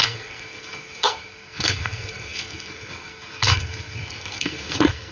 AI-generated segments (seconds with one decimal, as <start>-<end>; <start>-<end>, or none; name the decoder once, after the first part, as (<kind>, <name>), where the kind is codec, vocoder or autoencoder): 0.0-5.1 (codec, SNAC)